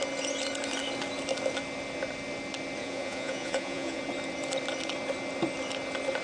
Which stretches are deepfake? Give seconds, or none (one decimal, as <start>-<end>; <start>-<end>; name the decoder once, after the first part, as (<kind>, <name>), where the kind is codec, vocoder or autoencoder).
2.8-4.0 (vocoder, Vocos)